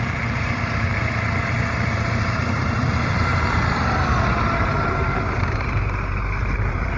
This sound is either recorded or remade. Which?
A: remade